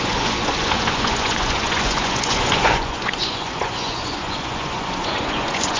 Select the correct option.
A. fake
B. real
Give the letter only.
A